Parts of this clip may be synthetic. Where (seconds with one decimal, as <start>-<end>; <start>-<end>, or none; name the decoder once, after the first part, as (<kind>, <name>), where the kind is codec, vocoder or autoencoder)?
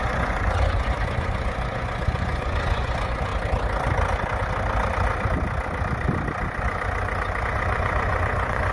0.0-3.3 (vocoder, Vocos); 7.4-8.7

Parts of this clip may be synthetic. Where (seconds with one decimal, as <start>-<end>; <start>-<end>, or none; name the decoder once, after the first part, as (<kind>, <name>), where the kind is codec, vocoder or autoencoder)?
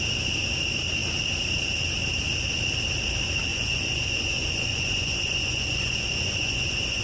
3.5-7.0 (vocoder, Vocos)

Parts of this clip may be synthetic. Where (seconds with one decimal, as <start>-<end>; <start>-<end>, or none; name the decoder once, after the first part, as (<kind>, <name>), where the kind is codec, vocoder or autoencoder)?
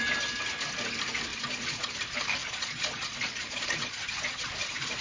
1.3-1.9 (vocoder, Vocos); 2.4-5.0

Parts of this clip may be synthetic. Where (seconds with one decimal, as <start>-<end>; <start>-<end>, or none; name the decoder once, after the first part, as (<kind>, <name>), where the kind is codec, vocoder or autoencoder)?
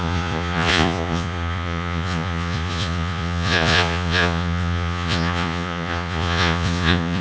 0.0-7.2 (vocoder, Vocos)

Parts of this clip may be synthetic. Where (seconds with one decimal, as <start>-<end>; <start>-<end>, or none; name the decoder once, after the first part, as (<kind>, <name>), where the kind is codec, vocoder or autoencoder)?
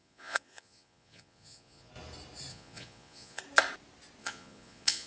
0.0-1.9 (vocoder, Vocos); 2.5-3.4; 4.2-5.1